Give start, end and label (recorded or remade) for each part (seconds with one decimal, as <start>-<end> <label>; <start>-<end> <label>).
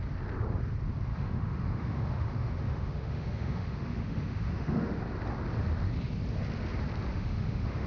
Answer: 0.0-1.1 recorded; 1.1-5.0 remade; 5.0-7.1 recorded; 7.1-7.9 remade